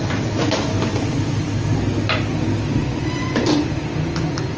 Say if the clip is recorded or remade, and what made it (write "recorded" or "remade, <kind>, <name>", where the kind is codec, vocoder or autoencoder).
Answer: recorded